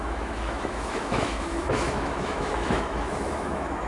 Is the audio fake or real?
fake